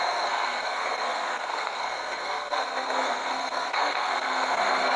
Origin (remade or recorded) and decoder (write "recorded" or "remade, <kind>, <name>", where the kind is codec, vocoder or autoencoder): remade, codec, SNAC